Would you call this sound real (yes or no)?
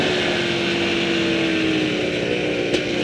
yes